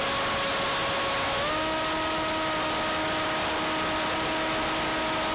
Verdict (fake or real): real